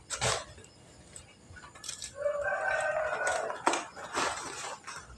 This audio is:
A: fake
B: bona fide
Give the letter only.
B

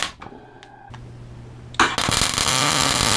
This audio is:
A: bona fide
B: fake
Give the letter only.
A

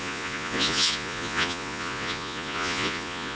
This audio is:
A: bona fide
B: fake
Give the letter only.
B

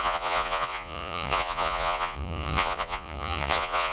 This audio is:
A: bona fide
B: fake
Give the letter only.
B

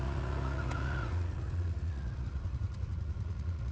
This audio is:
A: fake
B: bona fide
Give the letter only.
A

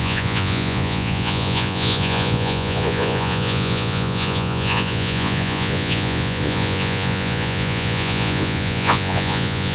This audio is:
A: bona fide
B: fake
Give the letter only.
B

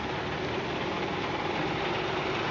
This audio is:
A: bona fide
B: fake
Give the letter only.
A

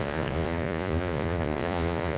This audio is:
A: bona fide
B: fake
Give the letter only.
B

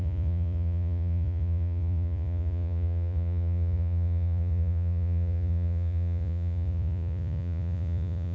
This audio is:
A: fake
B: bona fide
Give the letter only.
A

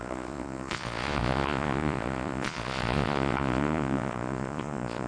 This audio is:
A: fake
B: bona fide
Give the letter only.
A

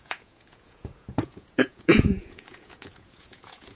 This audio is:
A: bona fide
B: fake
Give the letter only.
B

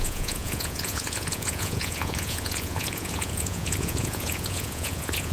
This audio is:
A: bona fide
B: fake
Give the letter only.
B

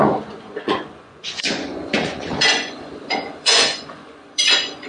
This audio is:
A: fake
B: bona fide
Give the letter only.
A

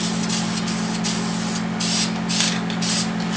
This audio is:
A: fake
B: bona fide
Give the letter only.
B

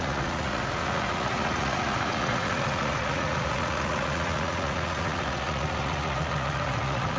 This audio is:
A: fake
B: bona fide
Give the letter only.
A